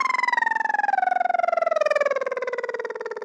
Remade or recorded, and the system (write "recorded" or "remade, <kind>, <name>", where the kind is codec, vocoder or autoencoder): recorded